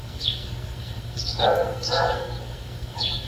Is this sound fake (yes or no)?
yes